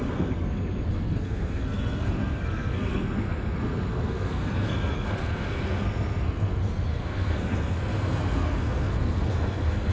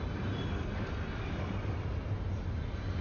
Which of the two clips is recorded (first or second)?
second